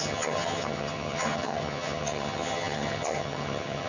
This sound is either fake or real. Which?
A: fake